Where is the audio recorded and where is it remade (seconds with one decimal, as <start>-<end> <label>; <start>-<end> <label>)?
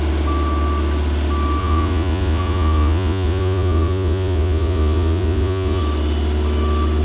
0.0-1.6 recorded; 1.6-5.8 remade; 5.8-7.0 recorded